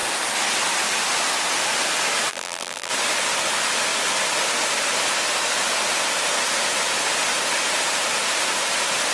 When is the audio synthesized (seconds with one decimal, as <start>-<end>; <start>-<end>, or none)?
2.3-2.9